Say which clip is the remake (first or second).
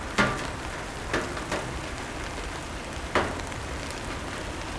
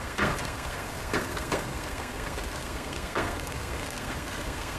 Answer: second